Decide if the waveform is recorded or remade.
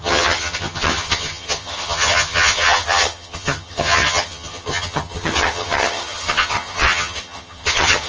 remade